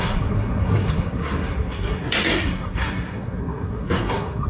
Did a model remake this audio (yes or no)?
yes